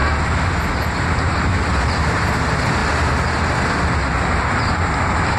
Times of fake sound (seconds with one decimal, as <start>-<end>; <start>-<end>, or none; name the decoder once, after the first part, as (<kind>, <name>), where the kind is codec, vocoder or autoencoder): 1.2-2.8 (vocoder, BigVGAN v2); 4.5-5.4